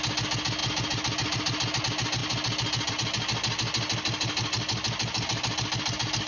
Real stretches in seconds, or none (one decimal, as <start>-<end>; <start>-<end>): 0.0-6.3